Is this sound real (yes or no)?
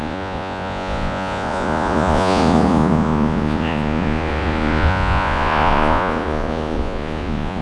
no